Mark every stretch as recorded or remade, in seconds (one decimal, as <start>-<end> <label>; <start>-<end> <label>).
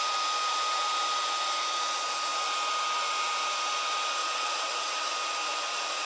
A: 0.0-4.2 recorded; 4.2-5.1 remade; 5.1-6.0 recorded